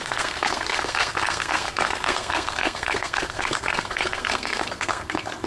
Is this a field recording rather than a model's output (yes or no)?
no